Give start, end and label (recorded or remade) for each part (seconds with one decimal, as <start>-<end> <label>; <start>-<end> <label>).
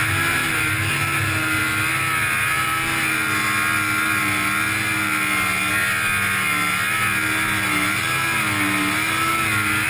0.0-0.4 recorded; 0.4-0.9 remade; 0.9-9.9 recorded